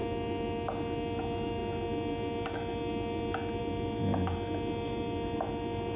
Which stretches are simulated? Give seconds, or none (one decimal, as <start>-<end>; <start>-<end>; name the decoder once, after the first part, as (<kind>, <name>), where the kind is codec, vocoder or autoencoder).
none